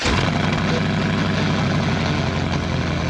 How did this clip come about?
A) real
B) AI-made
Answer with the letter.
A